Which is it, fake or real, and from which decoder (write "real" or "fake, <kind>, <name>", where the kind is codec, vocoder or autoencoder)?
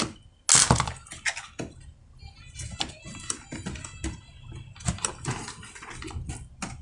real